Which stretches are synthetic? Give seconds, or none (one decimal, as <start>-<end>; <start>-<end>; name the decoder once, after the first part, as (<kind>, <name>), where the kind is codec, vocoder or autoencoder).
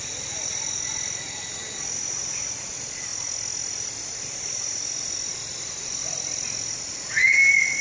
none